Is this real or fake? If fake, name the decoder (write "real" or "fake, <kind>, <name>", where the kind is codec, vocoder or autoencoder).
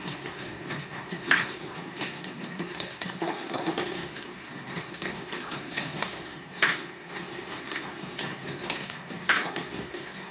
fake, codec, SNAC